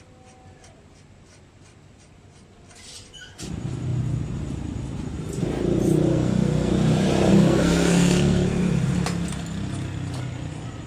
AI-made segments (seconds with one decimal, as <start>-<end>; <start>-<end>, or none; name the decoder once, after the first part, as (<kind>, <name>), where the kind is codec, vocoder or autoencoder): 6.1-6.7 (codec, SNAC); 7.3-8.6